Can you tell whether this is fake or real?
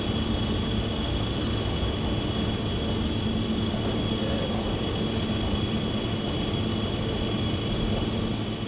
real